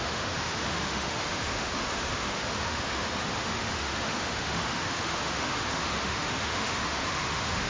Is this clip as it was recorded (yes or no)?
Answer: no